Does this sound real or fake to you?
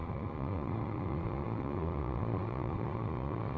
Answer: fake